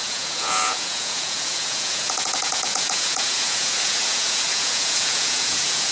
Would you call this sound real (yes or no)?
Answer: no